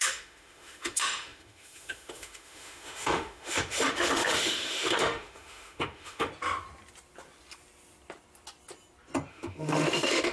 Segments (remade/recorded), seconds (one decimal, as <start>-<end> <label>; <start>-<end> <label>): 0.0-6.3 remade; 6.3-9.3 recorded; 9.3-10.3 remade